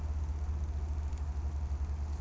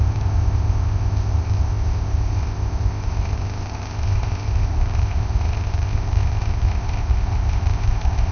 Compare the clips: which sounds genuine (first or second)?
first